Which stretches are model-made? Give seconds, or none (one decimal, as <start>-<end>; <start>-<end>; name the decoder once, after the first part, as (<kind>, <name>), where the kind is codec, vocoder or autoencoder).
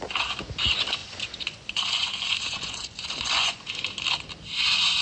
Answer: 1.0-3.6 (vocoder, Vocos)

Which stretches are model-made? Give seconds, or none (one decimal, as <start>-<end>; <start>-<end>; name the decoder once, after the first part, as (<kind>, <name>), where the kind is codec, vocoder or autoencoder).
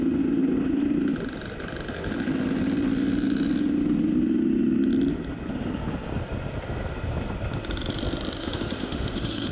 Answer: 8.4-9.5 (autoencoder, DAC-VAE)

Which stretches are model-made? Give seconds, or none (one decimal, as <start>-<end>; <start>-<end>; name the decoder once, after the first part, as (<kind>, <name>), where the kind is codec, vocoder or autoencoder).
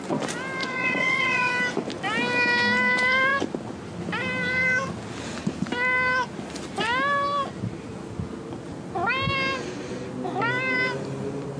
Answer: 0.6-1.5 (vocoder, Vocos)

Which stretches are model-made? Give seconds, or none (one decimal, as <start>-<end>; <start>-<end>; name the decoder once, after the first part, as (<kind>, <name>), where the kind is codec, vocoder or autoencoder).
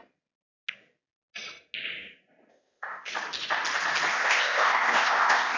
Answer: 2.5-3.1 (codec, ZipCodec); 4.1-5.6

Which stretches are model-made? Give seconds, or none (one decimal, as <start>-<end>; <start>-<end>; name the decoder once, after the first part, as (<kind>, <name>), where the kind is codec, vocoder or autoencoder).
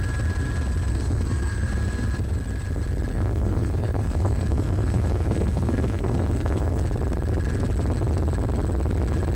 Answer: 0.9-1.7 (codec, SNAC); 3.1-6.8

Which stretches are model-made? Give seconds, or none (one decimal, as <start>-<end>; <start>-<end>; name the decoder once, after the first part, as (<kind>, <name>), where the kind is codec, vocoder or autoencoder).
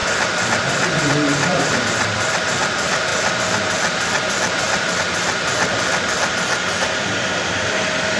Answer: 1.1-3.1 (vocoder, BigVGAN v2); 5.0-5.7; 7.0-8.2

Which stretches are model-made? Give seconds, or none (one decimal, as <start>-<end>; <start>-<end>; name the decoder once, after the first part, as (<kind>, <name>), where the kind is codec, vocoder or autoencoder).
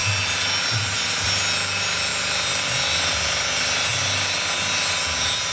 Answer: none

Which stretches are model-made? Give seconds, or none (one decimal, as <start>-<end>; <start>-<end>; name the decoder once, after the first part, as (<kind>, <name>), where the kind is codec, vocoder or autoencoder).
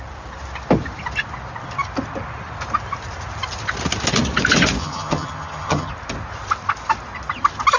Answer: 4.8-5.9 (vocoder, HiFi-GAN)